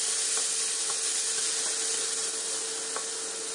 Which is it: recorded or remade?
recorded